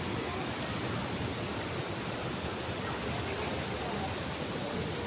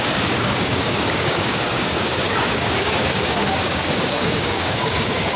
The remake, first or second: second